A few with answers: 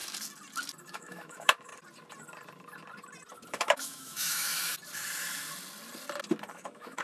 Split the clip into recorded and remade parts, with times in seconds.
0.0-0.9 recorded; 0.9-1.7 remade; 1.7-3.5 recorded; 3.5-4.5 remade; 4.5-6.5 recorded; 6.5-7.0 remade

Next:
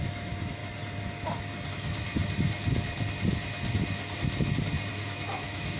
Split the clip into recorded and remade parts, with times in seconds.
0.0-0.6 remade; 0.6-1.7 recorded; 1.7-2.2 remade; 2.2-4.9 recorded; 4.9-5.8 remade

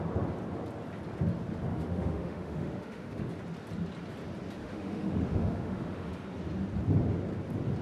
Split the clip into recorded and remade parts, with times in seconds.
0.0-1.7 recorded; 1.7-3.3 remade; 3.3-4.6 recorded; 4.6-6.1 remade; 6.1-7.8 recorded